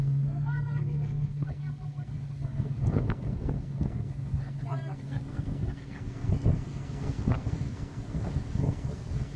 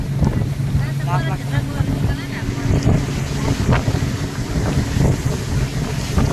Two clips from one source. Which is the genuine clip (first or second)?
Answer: second